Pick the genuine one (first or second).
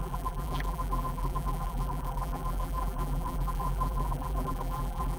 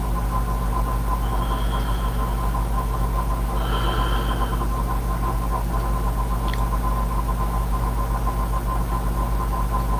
second